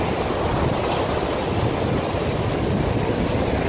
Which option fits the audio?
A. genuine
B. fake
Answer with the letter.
A